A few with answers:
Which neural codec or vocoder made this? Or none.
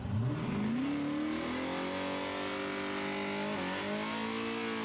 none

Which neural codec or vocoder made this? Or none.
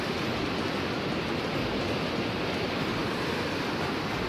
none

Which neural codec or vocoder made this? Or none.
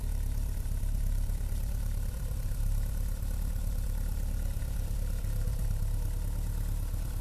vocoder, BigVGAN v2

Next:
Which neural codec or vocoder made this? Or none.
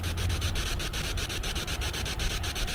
vocoder, BigVGAN v2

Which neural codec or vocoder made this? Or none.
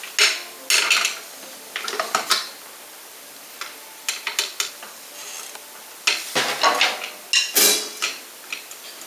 none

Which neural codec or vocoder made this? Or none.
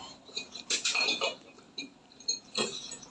vocoder, BigVGAN v2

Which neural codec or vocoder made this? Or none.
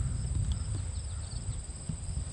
none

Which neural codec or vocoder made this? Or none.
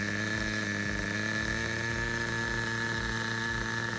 none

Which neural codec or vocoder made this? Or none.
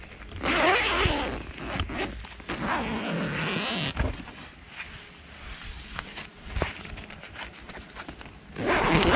none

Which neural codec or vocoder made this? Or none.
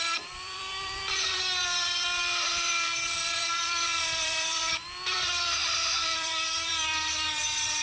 vocoder, BigVGAN v2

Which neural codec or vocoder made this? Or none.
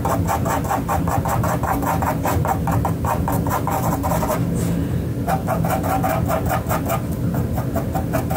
none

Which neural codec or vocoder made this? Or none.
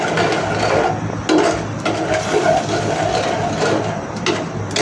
none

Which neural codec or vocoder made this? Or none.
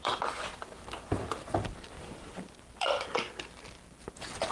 vocoder, BigVGAN v2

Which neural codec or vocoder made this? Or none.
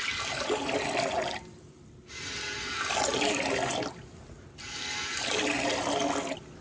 none